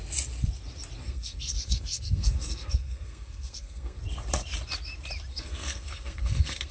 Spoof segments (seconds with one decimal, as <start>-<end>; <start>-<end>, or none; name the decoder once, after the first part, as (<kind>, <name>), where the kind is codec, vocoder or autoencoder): 1.0-4.0 (codec, SNAC); 5.3-6.7